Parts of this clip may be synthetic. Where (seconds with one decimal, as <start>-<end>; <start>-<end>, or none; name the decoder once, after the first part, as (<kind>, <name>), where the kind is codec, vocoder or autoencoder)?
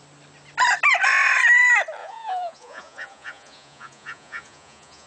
2.0-5.1 (vocoder, Vocos)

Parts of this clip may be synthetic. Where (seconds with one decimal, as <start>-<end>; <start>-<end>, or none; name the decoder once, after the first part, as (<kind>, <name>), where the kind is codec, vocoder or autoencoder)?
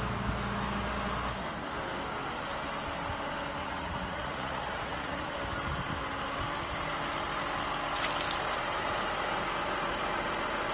3.6-5.4 (vocoder, Vocos)